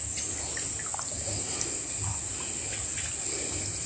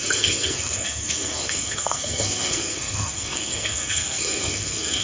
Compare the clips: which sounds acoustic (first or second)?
first